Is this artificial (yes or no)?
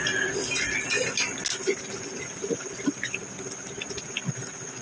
no